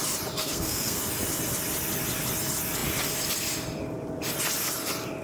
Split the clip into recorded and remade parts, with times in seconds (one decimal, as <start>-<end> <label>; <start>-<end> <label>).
0.0-0.4 recorded; 0.4-1.0 remade; 1.0-5.2 recorded